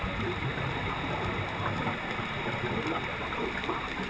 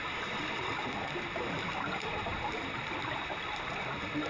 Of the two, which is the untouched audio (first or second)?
first